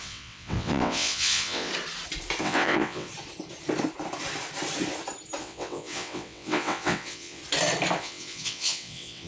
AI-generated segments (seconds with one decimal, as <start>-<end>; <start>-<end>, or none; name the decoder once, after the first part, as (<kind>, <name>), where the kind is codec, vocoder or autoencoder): 0.0-1.7 (vocoder, WaveNeXt); 2.4-3.1; 5.4-7.4; 8.0-9.3